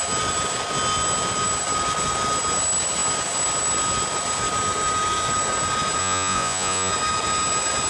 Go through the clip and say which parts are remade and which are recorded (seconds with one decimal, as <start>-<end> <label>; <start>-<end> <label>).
0.0-6.0 recorded; 6.0-6.9 remade; 6.9-7.9 recorded